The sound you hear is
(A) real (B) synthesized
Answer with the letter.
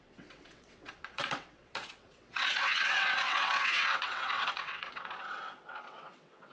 B